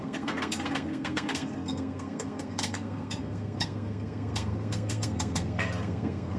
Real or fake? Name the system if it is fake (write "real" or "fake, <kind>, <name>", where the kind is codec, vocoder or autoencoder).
fake, codec, SNAC